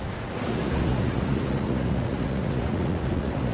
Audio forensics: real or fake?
fake